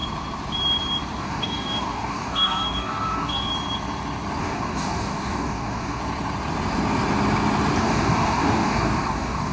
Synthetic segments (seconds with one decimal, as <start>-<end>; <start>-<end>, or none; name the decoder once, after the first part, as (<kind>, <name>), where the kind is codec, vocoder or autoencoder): 1.2-3.5 (codec, DAC); 4.4-6.0; 7.8-9.5